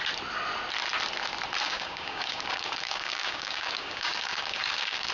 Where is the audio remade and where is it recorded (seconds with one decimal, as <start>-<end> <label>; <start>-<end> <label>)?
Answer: 0.0-1.6 recorded; 1.6-5.1 remade